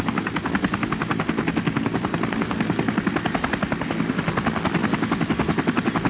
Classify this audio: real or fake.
real